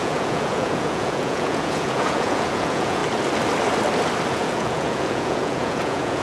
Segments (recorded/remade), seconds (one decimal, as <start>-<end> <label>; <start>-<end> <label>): 0.0-3.0 remade; 3.0-4.3 recorded; 4.3-6.2 remade